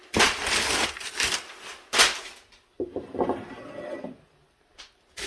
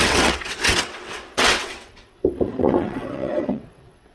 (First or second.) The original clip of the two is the first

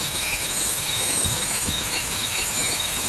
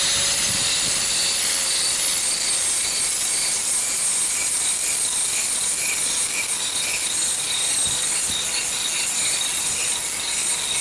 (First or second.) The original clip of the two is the second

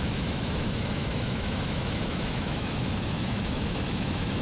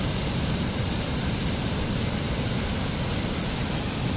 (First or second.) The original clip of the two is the second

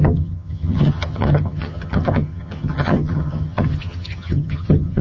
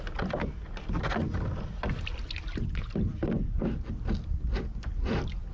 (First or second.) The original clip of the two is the second